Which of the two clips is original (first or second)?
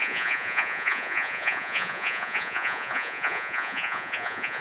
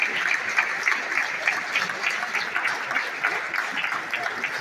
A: second